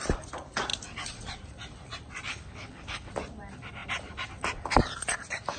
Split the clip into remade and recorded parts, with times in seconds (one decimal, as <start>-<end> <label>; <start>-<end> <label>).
0.0-2.3 recorded; 2.3-3.1 remade; 3.1-5.6 recorded